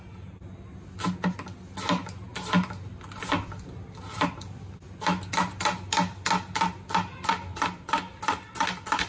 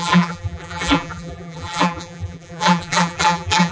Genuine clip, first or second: first